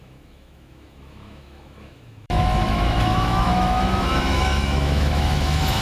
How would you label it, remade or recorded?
remade